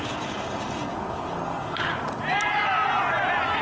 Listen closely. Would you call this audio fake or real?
real